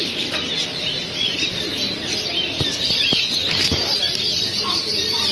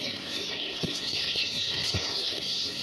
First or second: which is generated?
second